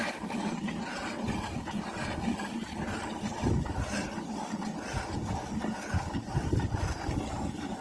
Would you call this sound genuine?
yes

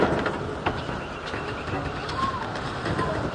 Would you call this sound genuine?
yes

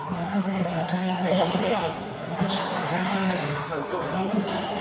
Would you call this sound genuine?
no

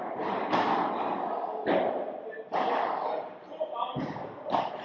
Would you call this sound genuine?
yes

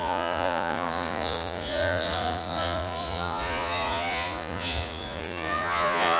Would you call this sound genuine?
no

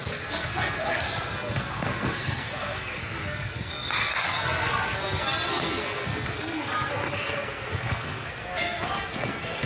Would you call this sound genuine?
no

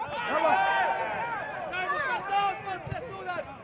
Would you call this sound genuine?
yes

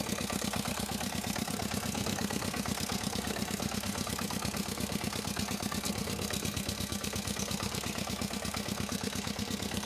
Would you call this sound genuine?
no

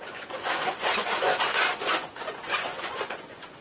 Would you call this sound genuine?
no